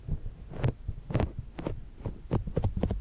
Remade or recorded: recorded